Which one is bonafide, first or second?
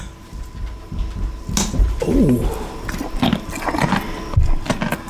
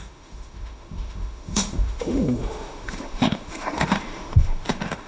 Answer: first